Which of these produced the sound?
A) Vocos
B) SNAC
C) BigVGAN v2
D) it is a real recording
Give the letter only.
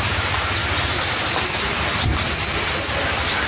D